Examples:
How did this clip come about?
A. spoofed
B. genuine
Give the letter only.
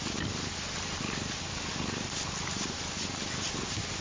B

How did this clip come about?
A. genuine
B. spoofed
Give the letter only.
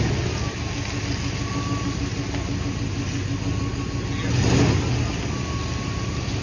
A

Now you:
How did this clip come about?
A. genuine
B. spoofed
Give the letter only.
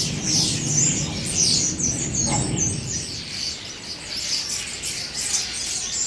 A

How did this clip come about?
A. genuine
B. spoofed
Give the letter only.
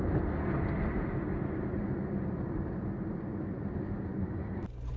A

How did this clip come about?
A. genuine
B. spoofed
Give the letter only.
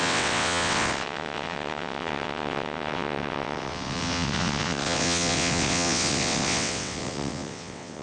B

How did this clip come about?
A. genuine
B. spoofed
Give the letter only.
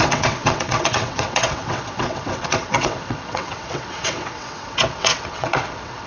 B